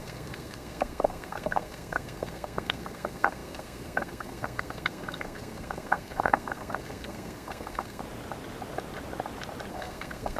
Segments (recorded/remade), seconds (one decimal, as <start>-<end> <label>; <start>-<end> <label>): 0.0-8.0 remade; 8.0-9.7 recorded; 9.7-10.4 remade